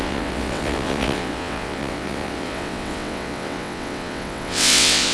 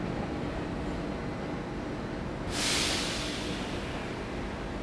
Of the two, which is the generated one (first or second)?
first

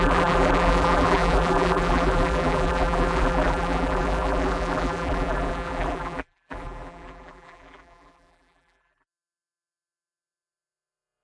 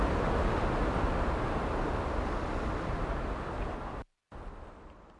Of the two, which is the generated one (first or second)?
first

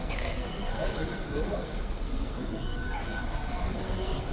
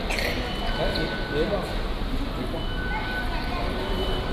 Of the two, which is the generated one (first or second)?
first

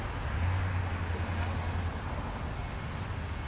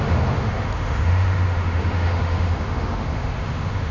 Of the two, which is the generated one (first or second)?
second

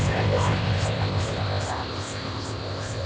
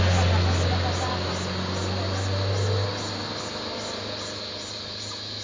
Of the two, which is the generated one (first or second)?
first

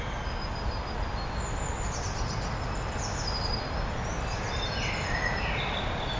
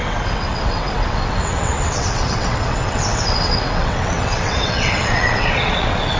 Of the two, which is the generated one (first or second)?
second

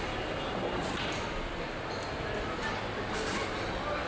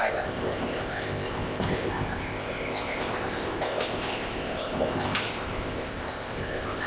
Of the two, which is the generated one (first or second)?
second